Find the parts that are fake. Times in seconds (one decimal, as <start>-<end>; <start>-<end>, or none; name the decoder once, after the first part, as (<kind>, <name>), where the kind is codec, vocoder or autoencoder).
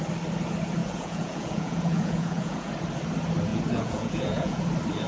0.8-2.7 (vocoder, Vocos); 3.5-4.6